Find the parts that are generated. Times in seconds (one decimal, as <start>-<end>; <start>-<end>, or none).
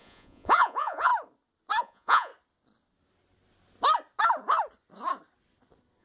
0.0-1.1; 1.8-2.3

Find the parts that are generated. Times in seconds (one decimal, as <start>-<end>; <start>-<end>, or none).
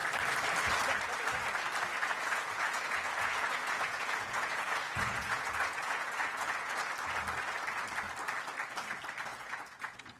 2.0-6.8; 9.3-10.2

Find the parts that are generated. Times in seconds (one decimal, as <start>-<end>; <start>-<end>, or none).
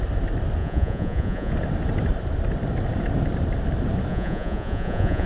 0.6-1.5; 4.1-5.3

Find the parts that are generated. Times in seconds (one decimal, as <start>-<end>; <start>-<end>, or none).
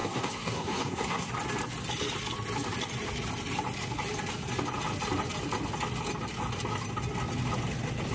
0.0-1.3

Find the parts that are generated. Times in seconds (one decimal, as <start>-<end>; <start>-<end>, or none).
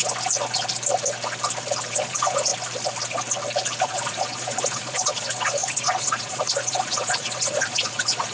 1.9-2.5; 3.8-8.3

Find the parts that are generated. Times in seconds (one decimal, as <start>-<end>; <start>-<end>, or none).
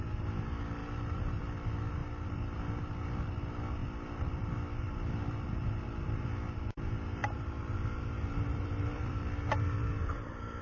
0.8-1.4; 2.0-2.9; 3.8-5.5; 7.2-9.2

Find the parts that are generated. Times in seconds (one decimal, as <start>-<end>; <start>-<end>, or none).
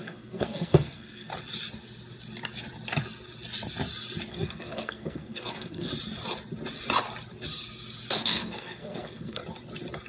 0.0-1.3; 4.3-5.9; 8.1-9.4